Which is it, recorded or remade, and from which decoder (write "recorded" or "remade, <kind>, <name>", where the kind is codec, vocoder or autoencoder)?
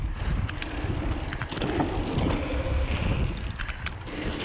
recorded